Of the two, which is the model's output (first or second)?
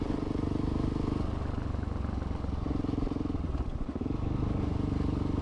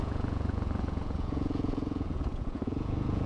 second